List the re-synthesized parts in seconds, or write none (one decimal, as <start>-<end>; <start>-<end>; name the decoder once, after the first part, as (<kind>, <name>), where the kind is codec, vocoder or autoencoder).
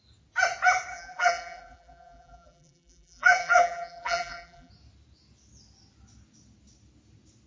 0.9-4.7 (vocoder, BigVGAN v2)